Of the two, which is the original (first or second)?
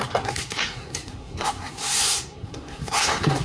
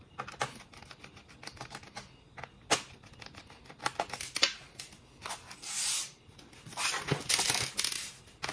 second